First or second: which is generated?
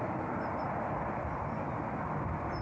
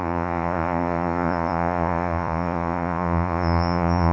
second